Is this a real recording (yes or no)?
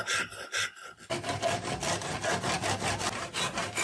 yes